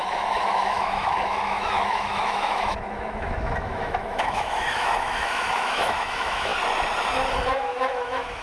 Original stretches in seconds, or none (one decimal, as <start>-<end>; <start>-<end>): 6.5-7.5